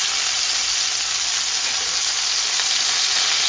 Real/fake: real